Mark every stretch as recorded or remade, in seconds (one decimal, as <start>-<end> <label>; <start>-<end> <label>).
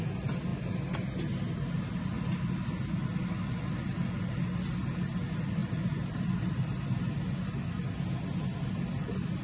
0.0-9.4 recorded